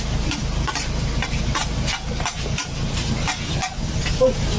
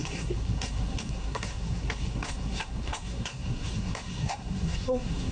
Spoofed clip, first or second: second